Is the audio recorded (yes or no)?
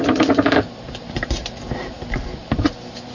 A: yes